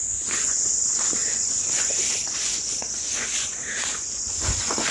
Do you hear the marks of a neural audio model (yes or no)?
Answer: yes